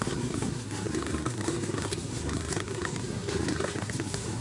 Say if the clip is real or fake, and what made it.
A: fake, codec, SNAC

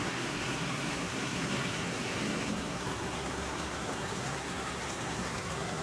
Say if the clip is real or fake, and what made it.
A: fake, codec, SNAC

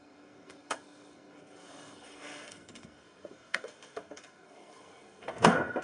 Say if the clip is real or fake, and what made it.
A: fake, codec, SNAC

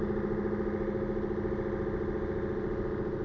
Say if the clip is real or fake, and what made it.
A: real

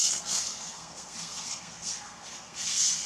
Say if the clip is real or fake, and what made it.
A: fake, codec, SNAC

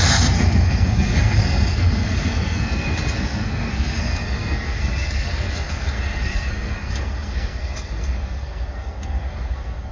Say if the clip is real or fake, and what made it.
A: fake, codec, SNAC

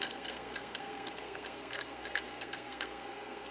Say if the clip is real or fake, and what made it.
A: fake, codec, SNAC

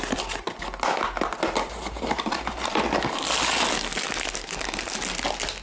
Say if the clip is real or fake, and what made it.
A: real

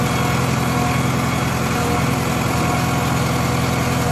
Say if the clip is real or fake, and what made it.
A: real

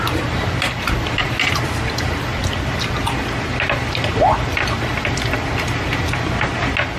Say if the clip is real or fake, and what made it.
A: real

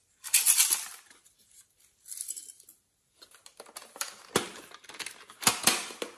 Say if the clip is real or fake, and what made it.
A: real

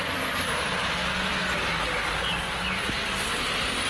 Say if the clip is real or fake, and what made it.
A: real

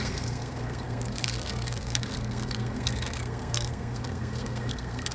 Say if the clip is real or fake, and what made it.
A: fake, codec, SNAC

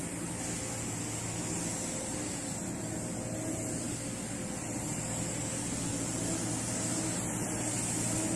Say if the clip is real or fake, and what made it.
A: real